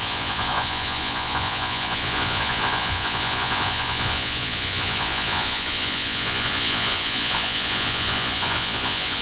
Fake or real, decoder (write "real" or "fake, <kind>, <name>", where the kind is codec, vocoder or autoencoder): fake, vocoder, Vocos